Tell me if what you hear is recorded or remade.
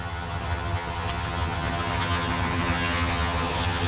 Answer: remade